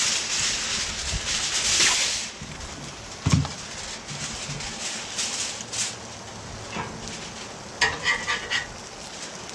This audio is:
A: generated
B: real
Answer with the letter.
B